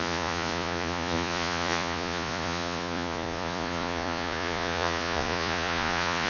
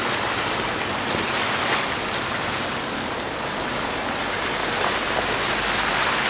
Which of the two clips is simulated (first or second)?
first